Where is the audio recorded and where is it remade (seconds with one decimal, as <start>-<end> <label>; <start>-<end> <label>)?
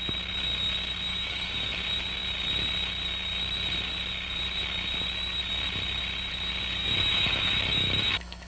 0.0-1.1 recorded; 1.1-1.8 remade; 1.8-6.8 recorded; 6.8-8.5 remade